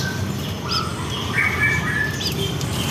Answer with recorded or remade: recorded